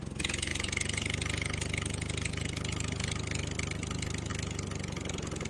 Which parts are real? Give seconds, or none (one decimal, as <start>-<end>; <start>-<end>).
0.0-5.5